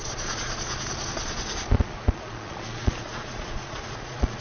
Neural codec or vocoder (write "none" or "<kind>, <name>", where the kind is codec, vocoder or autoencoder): vocoder, Vocos